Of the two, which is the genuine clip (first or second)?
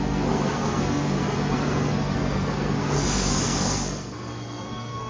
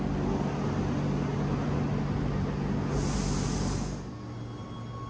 second